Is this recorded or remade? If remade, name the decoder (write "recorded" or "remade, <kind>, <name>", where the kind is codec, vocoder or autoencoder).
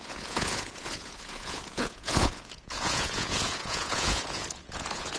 remade, vocoder, Vocos